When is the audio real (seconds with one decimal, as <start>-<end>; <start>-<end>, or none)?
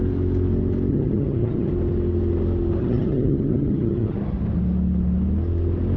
0.0-0.9; 1.7-2.8; 4.4-6.0